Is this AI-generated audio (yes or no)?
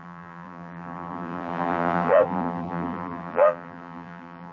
yes